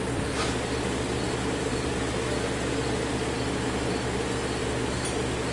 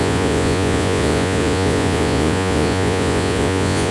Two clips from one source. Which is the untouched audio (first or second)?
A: first